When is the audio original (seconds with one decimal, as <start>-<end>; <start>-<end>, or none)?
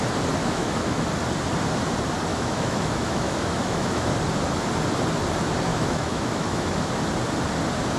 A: 0.0-0.4; 1.0-2.3; 4.1-5.7; 6.9-8.0